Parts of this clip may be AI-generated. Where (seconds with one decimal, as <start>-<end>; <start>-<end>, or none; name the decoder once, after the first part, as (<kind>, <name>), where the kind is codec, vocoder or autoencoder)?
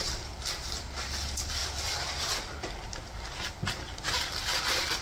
none